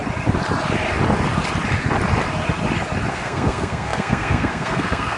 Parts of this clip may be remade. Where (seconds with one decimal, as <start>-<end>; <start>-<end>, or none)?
3.1-5.2